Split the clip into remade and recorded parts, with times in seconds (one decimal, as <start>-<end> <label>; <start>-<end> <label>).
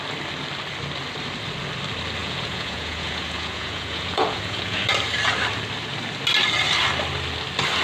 0.0-2.2 recorded; 2.2-4.8 remade; 4.8-7.8 recorded